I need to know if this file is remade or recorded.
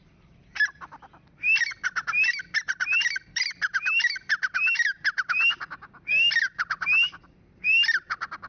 remade